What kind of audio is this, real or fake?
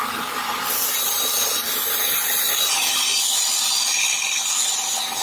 real